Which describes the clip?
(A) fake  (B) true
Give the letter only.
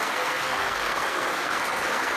A